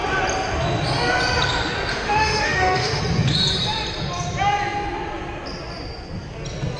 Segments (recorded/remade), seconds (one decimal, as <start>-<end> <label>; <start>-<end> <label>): 0.0-1.9 recorded; 1.9-3.0 remade; 3.0-6.8 recorded